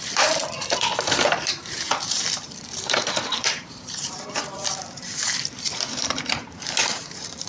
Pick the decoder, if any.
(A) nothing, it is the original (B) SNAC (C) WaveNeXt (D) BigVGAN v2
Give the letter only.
D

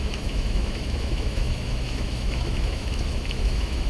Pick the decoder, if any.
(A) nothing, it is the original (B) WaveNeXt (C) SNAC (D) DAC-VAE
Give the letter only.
D